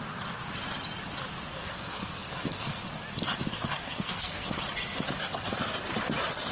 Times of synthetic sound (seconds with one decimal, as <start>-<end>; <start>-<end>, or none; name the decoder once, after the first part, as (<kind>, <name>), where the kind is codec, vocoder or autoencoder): 1.5-2.8 (codec, SNAC); 3.5-4.6